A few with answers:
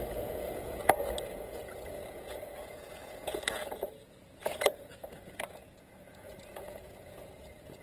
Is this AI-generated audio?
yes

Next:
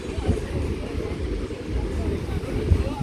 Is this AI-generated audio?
no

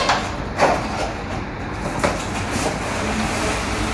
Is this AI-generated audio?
no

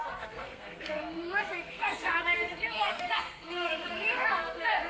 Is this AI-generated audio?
yes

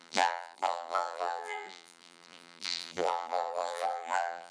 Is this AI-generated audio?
yes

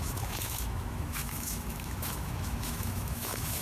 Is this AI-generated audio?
yes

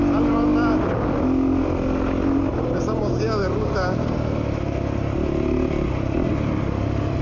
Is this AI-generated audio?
no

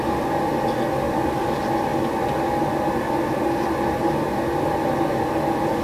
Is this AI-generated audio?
no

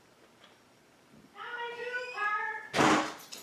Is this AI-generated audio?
yes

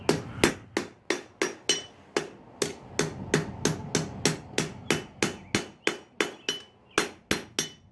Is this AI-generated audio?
no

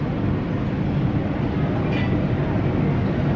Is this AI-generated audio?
no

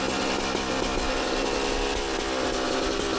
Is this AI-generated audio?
no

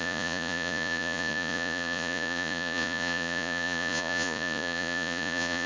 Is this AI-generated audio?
yes